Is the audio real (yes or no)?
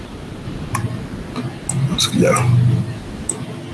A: yes